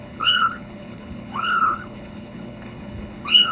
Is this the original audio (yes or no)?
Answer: no